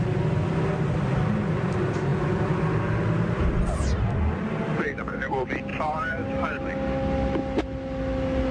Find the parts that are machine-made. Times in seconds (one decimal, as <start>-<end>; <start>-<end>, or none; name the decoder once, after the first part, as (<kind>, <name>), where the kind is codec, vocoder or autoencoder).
5.7-6.6 (vocoder, BigVGAN v2)